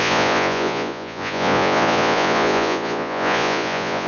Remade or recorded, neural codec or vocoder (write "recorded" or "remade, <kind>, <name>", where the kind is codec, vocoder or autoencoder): remade, vocoder, Vocos